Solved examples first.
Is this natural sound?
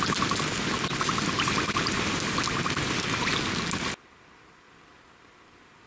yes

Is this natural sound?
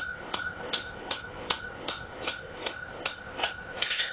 no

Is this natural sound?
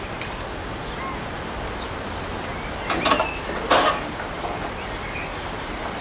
yes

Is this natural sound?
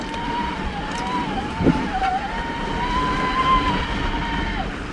yes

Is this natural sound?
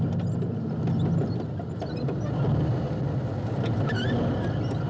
yes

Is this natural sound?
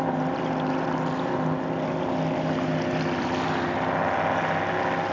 yes